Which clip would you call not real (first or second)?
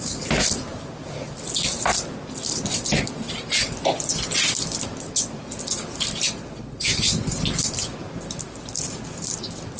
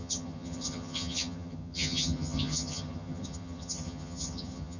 second